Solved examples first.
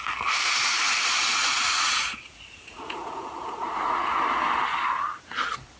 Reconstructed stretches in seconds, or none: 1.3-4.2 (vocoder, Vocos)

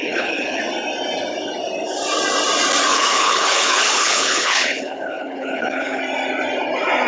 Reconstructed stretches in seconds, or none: 0.0-0.6 (codec, HILCodec); 2.9-6.0

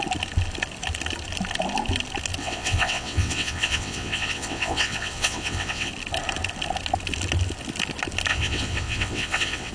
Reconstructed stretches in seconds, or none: 2.4-5.9 (vocoder, WaveNeXt); 8.3-9.7